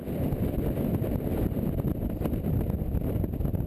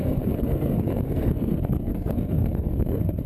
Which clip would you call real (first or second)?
first